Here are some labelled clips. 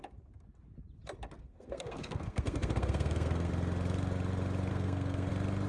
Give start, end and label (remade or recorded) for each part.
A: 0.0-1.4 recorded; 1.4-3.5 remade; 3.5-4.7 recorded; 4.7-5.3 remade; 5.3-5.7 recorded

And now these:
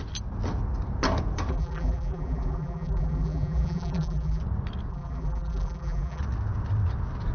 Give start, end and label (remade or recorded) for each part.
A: 0.0-1.5 recorded; 1.5-4.4 remade; 4.4-4.9 recorded; 4.9-6.2 remade; 6.2-7.3 recorded

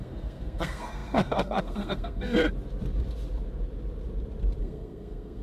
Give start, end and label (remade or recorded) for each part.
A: 0.0-2.4 remade; 2.4-4.6 recorded; 4.6-5.4 remade

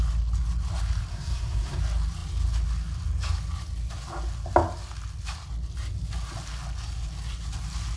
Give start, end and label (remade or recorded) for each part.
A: 0.0-1.1 recorded; 1.1-1.8 remade; 1.8-8.0 recorded